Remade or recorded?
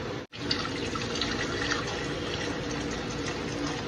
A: recorded